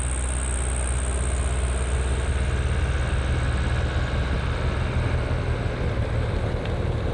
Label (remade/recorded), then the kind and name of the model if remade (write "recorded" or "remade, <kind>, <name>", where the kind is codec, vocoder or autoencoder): recorded